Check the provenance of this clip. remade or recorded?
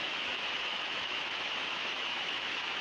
remade